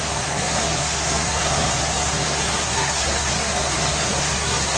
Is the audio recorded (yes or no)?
no